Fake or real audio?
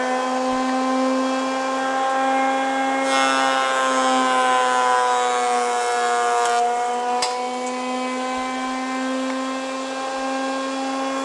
real